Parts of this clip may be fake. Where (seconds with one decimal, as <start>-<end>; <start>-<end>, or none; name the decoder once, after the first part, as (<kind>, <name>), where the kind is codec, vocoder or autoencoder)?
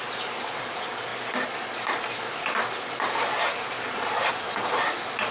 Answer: none